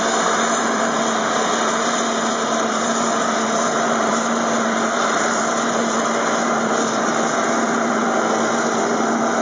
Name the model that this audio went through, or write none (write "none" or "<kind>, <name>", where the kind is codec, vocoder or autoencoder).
vocoder, BigVGAN v2